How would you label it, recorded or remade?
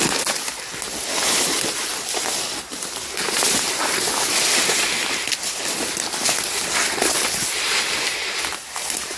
recorded